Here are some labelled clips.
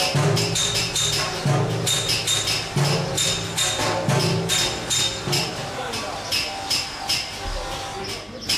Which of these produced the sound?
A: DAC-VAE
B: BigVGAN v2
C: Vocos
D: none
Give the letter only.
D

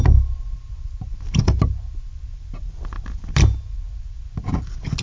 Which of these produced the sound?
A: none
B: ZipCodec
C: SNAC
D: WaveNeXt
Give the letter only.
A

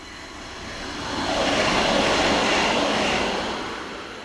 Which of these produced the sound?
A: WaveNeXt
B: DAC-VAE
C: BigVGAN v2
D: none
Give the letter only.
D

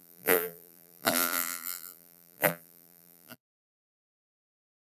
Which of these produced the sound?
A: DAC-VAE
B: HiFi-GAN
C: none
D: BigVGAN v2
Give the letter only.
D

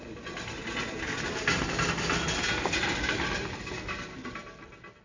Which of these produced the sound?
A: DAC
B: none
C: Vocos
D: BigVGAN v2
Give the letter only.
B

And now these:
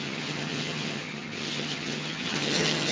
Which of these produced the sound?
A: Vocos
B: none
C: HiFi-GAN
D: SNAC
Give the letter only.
C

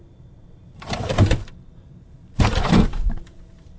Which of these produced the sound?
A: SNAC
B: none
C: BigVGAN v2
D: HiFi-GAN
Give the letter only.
C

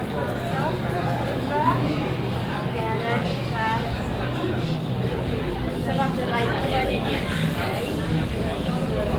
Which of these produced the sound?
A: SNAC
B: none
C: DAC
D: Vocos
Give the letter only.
C